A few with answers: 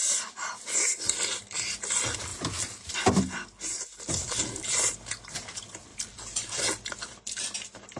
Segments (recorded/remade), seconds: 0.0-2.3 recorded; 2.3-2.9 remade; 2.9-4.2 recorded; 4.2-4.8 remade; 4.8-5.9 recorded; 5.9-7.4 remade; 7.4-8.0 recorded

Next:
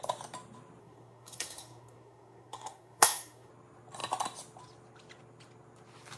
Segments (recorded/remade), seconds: 0.0-0.8 recorded; 0.8-3.5 remade; 3.5-6.2 recorded

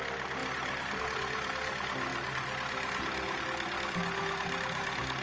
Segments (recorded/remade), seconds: 0.0-0.4 recorded; 0.4-1.0 remade; 1.0-5.2 recorded

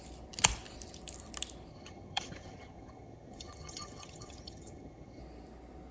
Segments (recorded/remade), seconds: 0.0-1.7 recorded; 1.7-5.2 remade; 5.2-5.9 recorded

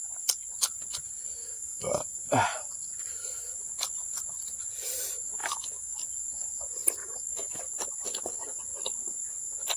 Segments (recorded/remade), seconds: 0.0-1.4 recorded; 1.4-2.0 remade; 2.0-5.4 recorded; 5.4-5.9 remade; 5.9-7.0 recorded; 7.0-7.6 remade; 7.6-9.8 recorded

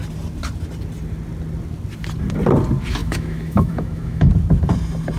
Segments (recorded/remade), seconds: 0.0-3.0 recorded; 3.0-4.3 remade; 4.3-5.2 recorded